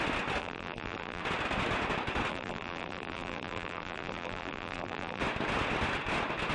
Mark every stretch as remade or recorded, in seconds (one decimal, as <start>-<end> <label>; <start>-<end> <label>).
0.0-0.4 recorded; 0.4-1.2 remade; 1.2-2.3 recorded; 2.3-5.2 remade; 5.2-6.5 recorded